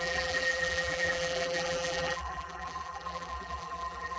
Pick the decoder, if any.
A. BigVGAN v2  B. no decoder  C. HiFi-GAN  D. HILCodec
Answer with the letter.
A